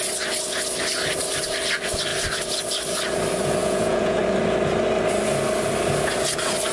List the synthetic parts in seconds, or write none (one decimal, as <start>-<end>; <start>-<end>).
3.6-4.2